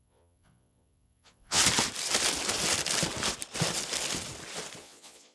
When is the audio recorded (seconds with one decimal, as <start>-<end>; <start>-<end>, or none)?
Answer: 1.6-4.8